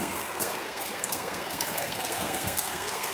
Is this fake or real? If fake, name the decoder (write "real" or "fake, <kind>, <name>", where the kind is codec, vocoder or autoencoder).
fake, codec, SNAC